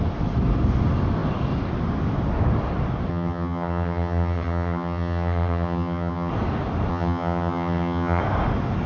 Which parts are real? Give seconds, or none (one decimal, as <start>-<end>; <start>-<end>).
0.0-3.1; 6.3-6.9; 8.2-8.9